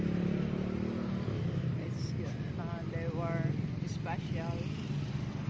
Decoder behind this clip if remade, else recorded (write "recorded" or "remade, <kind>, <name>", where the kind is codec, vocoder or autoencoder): recorded